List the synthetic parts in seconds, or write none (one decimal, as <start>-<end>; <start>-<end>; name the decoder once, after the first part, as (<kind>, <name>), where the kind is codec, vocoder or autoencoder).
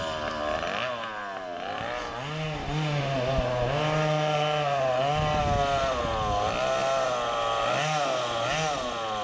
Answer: none